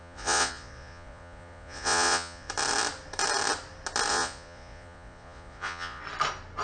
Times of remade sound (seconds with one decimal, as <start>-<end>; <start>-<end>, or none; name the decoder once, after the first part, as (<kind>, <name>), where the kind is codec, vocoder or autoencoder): 0.0-2.5 (vocoder, Vocos); 4.1-6.0